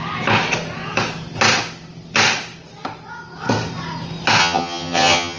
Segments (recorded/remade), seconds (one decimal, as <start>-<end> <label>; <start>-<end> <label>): 0.0-4.4 recorded; 4.4-5.4 remade